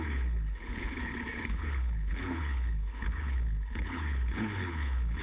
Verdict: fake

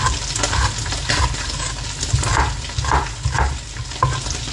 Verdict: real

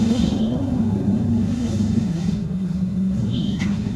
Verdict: fake